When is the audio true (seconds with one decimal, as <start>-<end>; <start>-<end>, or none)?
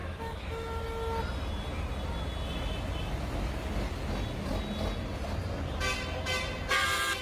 0.8-7.2